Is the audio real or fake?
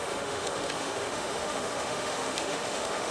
fake